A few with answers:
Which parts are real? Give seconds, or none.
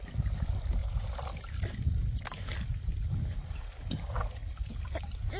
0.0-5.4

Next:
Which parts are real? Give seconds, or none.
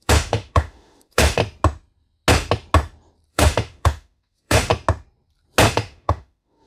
1.4-3.3; 4.7-5.7